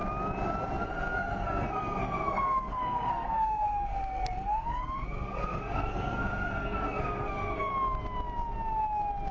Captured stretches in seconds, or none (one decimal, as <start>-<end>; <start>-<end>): 0.0-0.8; 7.7-9.3